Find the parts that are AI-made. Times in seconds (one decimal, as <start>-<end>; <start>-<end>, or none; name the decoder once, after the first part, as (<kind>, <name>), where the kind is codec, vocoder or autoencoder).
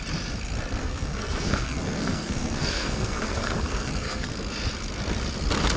0.8-4.3 (codec, SNAC)